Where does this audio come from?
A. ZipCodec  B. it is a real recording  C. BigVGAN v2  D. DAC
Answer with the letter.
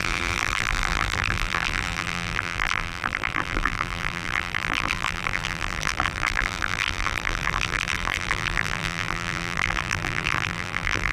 C